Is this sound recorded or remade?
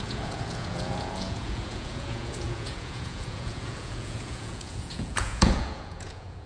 remade